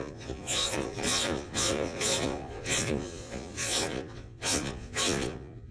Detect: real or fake fake